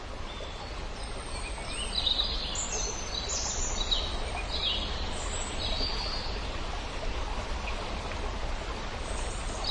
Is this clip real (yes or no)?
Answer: yes